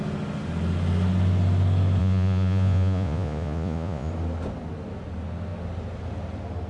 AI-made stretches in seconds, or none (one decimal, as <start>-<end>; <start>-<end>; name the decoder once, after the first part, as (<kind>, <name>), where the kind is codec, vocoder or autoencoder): 2.0-4.1 (vocoder, Vocos)